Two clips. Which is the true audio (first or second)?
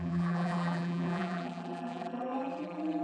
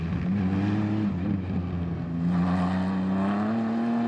second